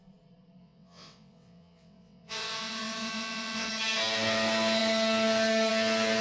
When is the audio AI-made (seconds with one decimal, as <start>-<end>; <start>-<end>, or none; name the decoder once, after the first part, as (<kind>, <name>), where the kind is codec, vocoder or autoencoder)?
0.6-3.7 (vocoder, WaveNeXt)